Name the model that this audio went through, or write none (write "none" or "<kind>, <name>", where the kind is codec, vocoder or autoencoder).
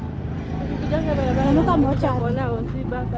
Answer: none